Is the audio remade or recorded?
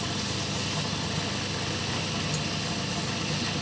recorded